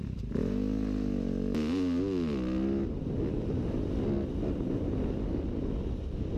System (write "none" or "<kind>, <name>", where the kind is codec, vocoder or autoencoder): none